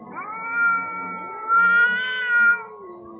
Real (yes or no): yes